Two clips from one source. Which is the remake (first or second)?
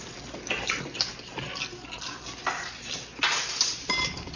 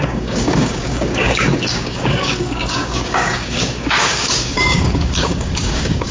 second